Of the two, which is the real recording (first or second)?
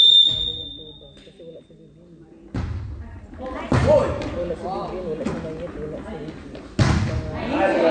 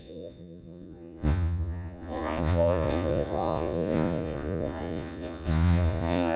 first